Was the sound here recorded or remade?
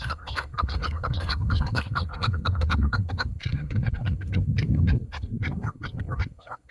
remade